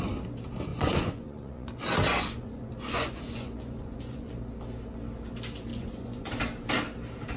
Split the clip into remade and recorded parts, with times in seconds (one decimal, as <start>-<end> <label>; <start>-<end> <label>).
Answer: 0.0-0.7 recorded; 0.7-1.7 remade; 1.7-2.1 recorded; 2.1-4.3 remade; 4.3-5.7 recorded; 5.7-6.4 remade; 6.4-7.4 recorded